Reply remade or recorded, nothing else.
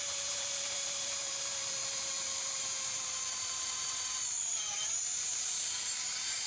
remade